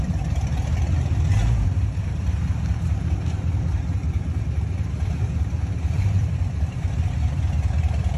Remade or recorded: remade